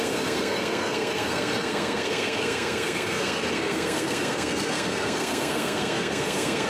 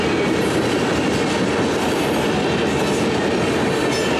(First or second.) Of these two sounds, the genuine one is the second